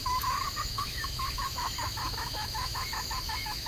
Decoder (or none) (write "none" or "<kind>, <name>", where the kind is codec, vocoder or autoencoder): autoencoder, DAC-VAE